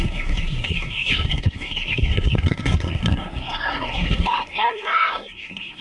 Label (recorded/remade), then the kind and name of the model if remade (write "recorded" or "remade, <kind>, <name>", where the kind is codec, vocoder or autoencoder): remade, codec, SNAC